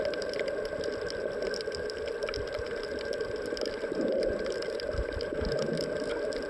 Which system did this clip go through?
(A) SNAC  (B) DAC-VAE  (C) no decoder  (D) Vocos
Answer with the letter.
C